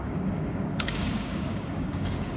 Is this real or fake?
fake